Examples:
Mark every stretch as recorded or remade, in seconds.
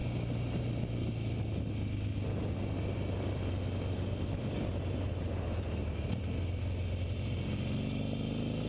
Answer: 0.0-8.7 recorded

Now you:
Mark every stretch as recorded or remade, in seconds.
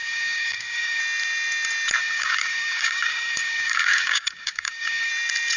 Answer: 0.0-1.0 remade; 1.0-2.0 recorded; 2.0-5.1 remade; 5.1-5.6 recorded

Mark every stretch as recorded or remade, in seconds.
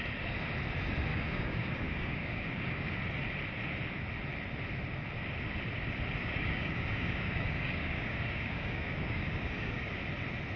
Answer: 0.0-1.1 recorded; 1.1-3.0 remade; 3.0-6.2 recorded; 6.2-9.9 remade; 9.9-10.6 recorded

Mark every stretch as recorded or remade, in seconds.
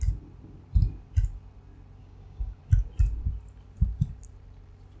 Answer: 0.0-2.0 recorded; 2.0-2.6 remade; 2.6-5.0 recorded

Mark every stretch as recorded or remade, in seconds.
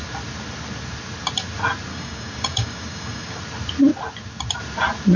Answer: 0.0-1.9 recorded; 1.9-3.4 remade; 3.4-5.2 recorded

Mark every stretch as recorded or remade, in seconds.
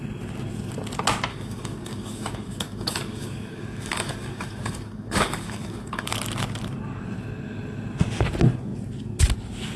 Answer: 0.0-1.3 recorded; 1.3-6.1 remade; 6.1-9.8 recorded